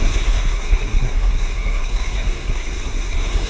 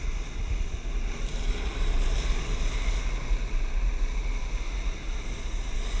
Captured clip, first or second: second